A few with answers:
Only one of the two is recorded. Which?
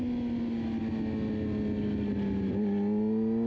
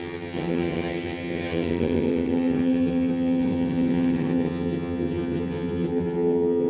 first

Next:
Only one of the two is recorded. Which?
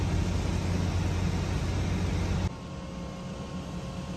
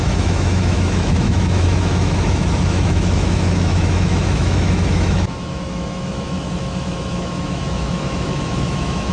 first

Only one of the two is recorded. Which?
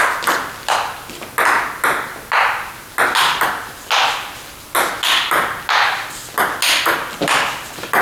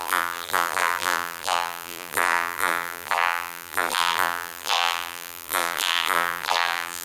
first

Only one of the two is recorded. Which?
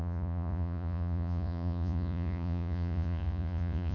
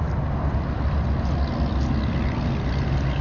second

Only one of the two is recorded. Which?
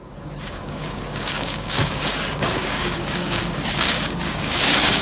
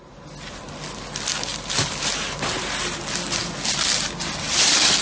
second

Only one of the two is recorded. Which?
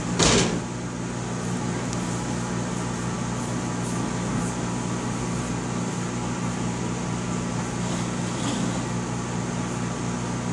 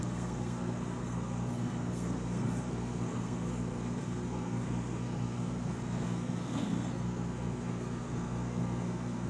first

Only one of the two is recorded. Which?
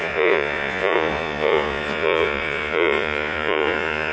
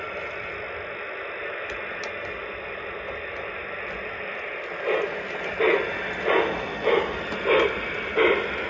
second